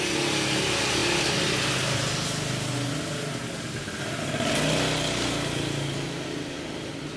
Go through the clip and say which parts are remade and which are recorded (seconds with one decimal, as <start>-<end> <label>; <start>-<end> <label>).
0.0-7.2 recorded